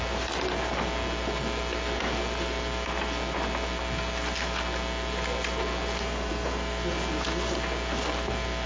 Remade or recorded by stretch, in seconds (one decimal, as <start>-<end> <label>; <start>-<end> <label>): 0.0-8.7 recorded